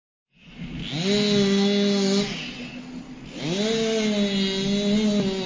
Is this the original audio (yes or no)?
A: yes